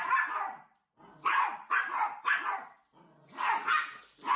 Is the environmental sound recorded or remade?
recorded